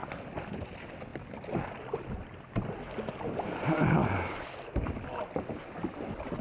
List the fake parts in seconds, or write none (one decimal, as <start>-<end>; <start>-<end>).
none